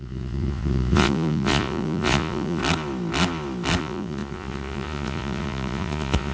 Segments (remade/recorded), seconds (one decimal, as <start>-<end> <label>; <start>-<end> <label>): 0.0-2.6 remade; 2.6-3.8 recorded; 3.8-6.3 remade